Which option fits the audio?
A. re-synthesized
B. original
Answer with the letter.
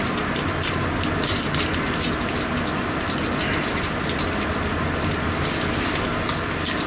B